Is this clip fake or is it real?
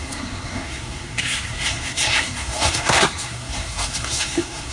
fake